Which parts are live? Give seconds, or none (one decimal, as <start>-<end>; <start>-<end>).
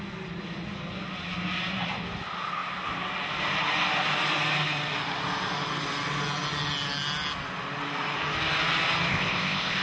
0.0-9.1